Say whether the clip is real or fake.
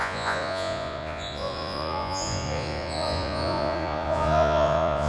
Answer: fake